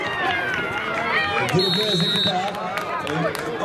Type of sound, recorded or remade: recorded